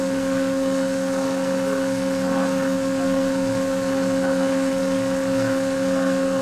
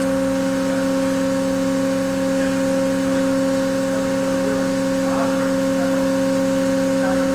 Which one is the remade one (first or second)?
first